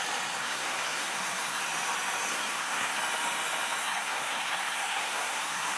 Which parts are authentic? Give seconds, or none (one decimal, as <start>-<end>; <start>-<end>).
0.0-0.4; 1.6-2.3; 3.0-3.8